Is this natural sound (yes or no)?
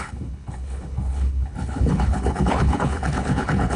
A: no